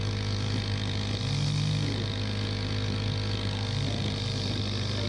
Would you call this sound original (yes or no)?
yes